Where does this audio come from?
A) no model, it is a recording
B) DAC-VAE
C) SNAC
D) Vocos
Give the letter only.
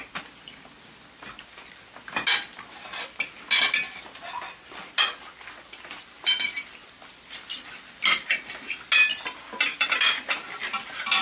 A